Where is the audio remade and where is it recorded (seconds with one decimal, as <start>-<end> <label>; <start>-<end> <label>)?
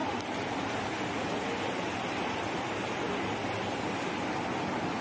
0.0-5.0 recorded